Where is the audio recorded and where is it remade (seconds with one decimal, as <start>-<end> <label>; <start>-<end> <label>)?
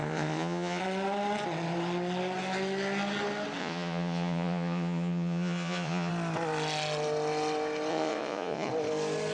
0.0-0.8 remade; 0.8-3.6 recorded; 3.6-6.1 remade; 6.1-7.9 recorded; 7.9-8.7 remade; 8.7-9.3 recorded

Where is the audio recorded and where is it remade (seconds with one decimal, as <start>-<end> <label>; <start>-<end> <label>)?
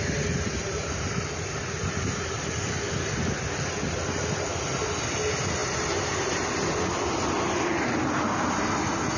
0.0-0.6 recorded; 0.6-1.6 remade; 1.6-9.2 recorded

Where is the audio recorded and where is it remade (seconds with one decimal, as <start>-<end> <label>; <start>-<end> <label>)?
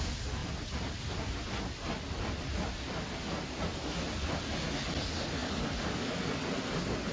0.0-7.1 recorded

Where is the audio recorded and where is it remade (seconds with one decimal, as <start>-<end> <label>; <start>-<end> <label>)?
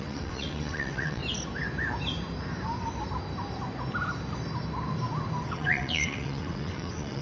0.0-1.2 remade; 1.2-5.5 recorded; 5.5-7.2 remade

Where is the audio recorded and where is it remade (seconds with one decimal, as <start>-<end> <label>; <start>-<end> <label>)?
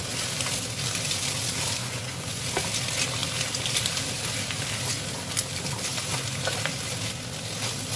0.0-1.8 recorded; 1.8-2.4 remade; 2.4-8.0 recorded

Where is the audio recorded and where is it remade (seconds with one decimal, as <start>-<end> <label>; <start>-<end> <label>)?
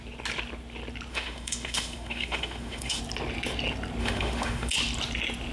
0.0-1.1 recorded; 1.1-3.0 remade; 3.0-4.0 recorded; 4.0-4.7 remade; 4.7-5.5 recorded